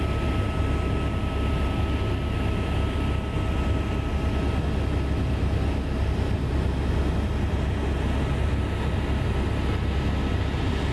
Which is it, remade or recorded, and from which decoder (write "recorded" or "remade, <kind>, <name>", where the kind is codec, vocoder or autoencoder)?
recorded